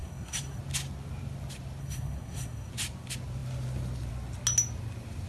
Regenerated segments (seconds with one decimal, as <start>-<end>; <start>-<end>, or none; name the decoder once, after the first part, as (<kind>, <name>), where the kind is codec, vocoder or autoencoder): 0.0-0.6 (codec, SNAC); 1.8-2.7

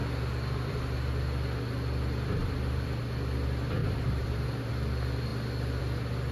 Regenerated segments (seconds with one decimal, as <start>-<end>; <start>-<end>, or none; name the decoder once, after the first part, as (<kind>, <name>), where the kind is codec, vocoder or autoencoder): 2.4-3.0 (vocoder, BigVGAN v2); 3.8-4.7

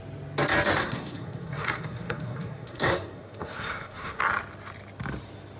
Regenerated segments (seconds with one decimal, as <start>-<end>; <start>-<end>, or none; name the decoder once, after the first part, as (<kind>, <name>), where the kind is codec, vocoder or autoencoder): 0.8-4.2 (codec, SNAC)

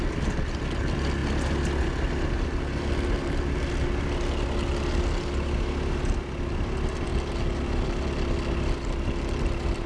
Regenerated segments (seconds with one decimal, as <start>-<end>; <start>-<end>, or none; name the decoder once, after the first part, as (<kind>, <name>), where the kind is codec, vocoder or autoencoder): none